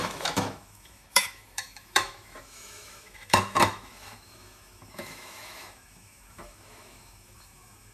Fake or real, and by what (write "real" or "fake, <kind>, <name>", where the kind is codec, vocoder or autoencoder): fake, autoencoder, DAC-VAE